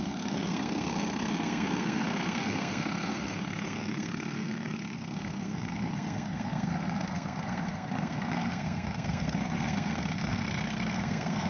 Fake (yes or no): yes